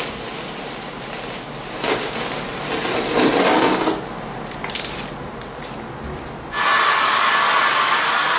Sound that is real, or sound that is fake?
real